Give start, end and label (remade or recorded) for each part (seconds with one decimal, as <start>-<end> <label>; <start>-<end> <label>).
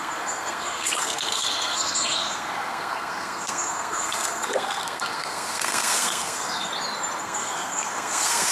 0.0-6.7 remade; 6.7-7.2 recorded; 7.2-8.5 remade